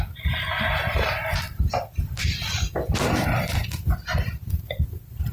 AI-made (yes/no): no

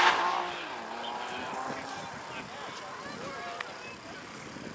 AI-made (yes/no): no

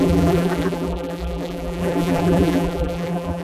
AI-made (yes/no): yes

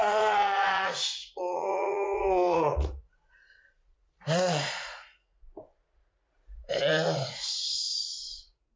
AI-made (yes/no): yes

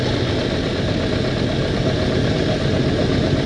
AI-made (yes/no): no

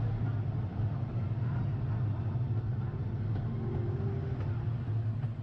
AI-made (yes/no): no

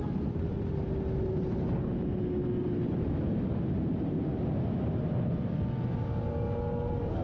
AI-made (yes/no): no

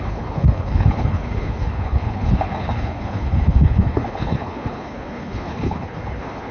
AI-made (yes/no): yes